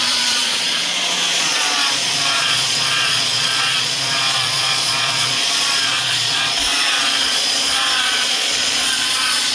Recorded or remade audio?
remade